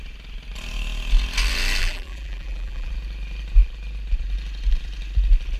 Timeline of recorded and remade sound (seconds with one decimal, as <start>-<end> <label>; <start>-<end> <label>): 0.0-1.8 recorded; 1.8-2.9 remade; 2.9-5.6 recorded